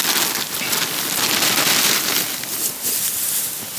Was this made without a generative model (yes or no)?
yes